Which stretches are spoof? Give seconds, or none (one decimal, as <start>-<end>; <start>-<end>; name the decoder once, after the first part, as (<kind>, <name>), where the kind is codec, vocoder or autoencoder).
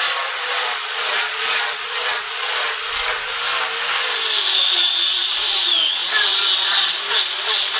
0.0-3.3 (vocoder, Vocos); 4.7-7.8